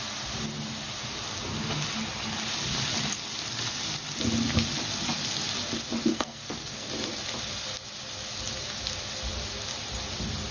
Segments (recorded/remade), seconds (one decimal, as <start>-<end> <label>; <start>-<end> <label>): 0.0-6.1 recorded; 6.1-6.9 remade; 6.9-10.5 recorded